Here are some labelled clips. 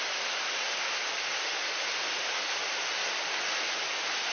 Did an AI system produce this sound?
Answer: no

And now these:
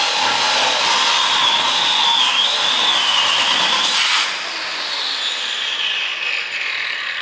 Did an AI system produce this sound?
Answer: no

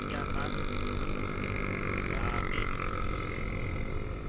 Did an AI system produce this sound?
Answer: no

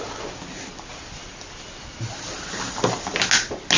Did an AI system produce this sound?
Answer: no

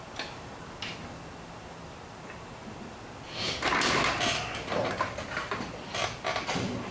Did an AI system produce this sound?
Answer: no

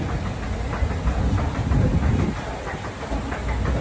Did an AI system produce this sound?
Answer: no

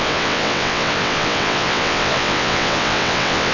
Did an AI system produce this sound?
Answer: yes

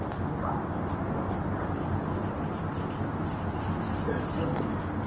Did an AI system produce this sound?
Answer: no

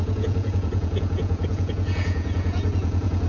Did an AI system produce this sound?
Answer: yes